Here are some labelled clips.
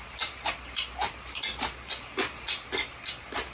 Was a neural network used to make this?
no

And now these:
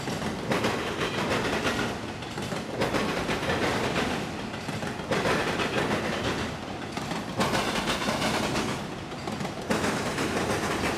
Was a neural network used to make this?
no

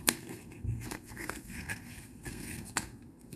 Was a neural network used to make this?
yes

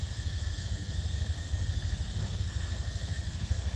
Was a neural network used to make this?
yes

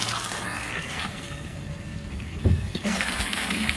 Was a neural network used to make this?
yes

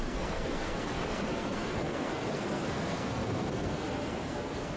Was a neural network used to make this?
yes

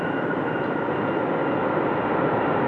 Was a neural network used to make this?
no